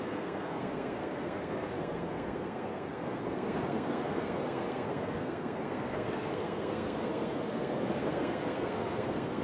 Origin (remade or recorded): remade